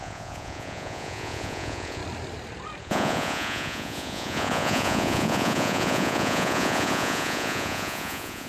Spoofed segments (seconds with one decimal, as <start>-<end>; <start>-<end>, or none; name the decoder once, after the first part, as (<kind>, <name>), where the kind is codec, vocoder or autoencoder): 0.0-2.0 (vocoder, Vocos); 2.8-8.5